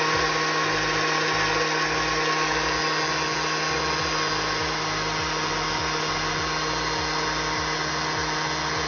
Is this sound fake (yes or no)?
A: no